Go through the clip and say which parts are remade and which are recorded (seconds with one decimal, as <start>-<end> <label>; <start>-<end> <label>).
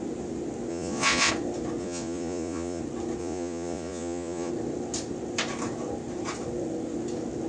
0.0-0.7 recorded; 0.7-1.3 remade; 1.3-1.8 recorded; 1.8-2.8 remade; 2.8-3.2 recorded; 3.2-4.5 remade; 4.5-7.5 recorded